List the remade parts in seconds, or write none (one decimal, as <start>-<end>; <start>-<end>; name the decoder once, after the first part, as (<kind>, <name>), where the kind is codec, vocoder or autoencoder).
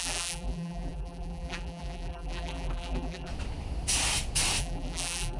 0.0-3.3 (vocoder, BigVGAN v2); 4.6-5.4